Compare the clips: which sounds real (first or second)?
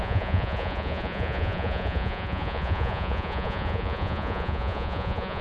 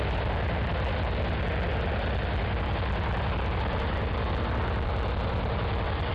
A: second